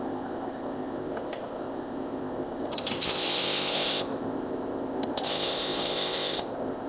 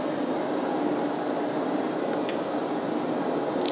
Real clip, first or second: second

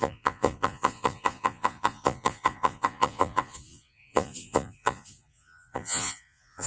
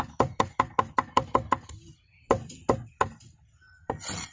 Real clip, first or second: second